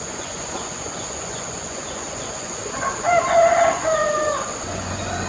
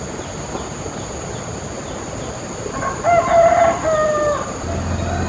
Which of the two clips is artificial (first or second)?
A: first